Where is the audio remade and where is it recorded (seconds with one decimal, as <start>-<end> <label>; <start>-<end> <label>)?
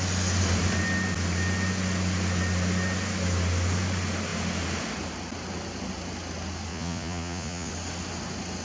0.0-6.7 recorded; 6.7-7.7 remade; 7.7-8.6 recorded